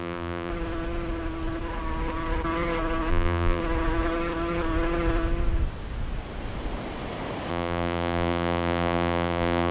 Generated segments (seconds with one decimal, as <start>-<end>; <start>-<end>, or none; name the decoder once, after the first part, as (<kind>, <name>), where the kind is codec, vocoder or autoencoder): 0.0-0.5 (vocoder, BigVGAN v2); 3.1-3.6; 7.5-9.7